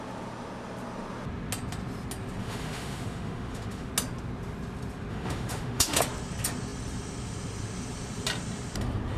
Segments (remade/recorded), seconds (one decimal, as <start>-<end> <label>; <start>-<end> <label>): 0.0-2.4 recorded; 2.4-3.9 remade; 3.9-5.1 recorded; 5.1-6.0 remade; 6.0-9.2 recorded